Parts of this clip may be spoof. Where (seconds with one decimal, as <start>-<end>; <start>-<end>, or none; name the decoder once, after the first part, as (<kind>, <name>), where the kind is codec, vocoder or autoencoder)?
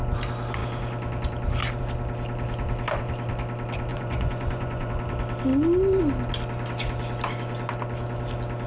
3.9-4.9 (vocoder, Vocos)